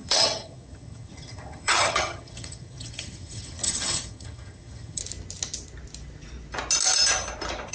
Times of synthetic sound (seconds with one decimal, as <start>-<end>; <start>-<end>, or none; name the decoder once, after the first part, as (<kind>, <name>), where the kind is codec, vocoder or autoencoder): 0.0-5.0 (vocoder, HiFi-GAN)

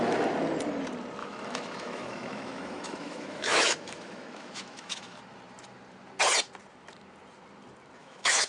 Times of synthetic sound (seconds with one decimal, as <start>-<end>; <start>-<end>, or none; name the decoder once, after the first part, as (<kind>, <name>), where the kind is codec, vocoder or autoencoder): 1.2-5.2 (autoencoder, DAC-VAE); 8.0-8.5

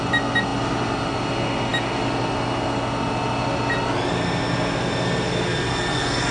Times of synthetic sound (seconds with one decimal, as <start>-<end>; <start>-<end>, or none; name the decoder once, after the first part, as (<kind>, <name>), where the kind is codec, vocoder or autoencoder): none

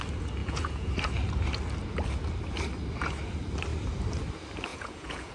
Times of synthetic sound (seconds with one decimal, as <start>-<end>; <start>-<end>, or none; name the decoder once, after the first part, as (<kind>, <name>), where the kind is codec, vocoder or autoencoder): 0.4-0.9 (vocoder, Vocos); 4.7-5.3

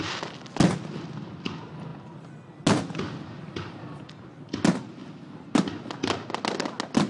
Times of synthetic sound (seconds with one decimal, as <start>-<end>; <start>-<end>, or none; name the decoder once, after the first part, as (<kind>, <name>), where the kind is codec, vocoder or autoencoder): none

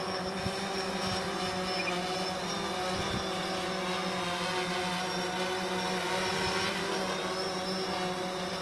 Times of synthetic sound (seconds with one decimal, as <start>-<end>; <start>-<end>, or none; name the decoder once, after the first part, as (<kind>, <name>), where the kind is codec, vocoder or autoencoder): none

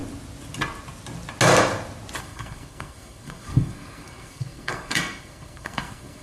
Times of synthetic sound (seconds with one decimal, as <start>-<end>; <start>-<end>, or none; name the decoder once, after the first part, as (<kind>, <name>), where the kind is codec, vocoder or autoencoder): 2.2-6.2 (codec, SNAC)

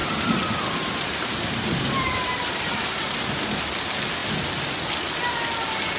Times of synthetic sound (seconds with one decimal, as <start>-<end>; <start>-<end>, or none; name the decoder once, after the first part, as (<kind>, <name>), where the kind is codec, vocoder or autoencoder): 0.0-3.6 (vocoder, BigVGAN v2)